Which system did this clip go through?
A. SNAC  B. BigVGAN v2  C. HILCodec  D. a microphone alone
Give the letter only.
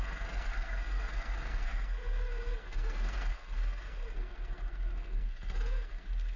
A